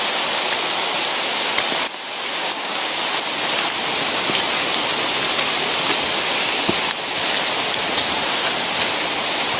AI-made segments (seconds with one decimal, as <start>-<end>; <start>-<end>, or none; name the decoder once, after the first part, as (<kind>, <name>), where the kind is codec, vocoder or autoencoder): 2.4-3.0 (codec, DAC)